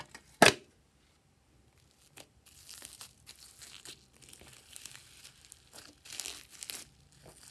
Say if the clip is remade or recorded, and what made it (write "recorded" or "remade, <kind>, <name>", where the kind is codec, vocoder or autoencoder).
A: recorded